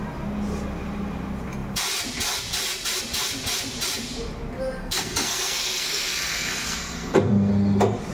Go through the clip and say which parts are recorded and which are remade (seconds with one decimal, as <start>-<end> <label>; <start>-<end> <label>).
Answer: 0.0-4.8 recorded; 4.8-7.5 remade; 7.5-8.1 recorded